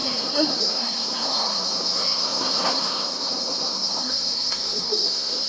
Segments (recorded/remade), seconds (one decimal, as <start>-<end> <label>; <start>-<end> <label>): 0.0-5.5 remade